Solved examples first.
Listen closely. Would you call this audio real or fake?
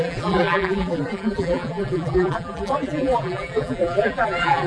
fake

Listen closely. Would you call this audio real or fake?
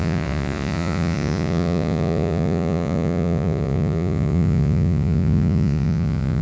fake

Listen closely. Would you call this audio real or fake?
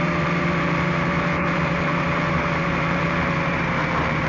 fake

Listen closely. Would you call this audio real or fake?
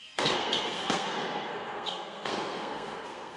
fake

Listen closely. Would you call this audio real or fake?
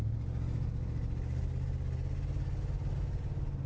real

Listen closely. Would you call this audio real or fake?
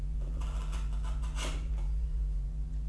fake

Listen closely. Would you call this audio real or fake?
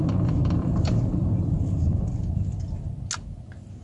real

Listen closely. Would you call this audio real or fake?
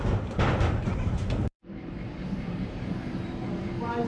fake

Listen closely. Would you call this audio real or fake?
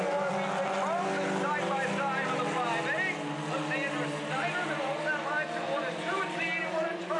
real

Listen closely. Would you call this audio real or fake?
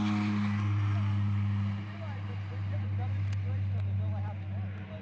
real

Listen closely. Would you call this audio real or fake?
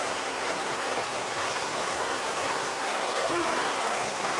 fake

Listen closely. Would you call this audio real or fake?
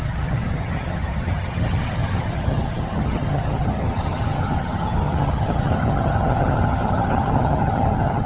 fake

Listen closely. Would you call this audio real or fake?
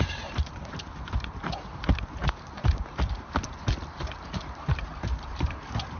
fake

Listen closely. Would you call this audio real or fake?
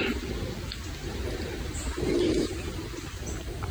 real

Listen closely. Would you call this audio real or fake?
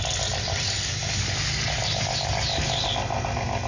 real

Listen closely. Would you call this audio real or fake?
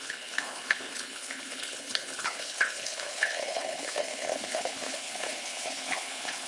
fake